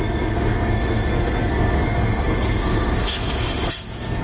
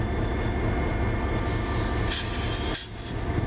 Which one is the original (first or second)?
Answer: second